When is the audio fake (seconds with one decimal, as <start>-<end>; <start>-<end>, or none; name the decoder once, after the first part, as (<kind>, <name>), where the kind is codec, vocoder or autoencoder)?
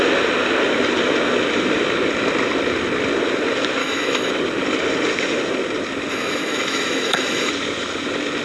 3.8-4.3 (autoencoder, DAC-VAE); 6.1-7.5